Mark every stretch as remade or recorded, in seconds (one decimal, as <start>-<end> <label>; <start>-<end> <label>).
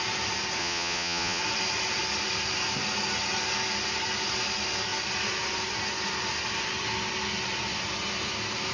0.0-0.6 recorded; 0.6-1.4 remade; 1.4-8.7 recorded